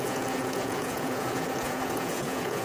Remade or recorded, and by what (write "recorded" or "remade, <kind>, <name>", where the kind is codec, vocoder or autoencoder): remade, vocoder, Vocos